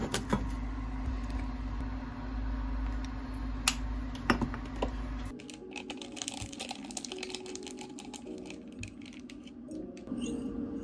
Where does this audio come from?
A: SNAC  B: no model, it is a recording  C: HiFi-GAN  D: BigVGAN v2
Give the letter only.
B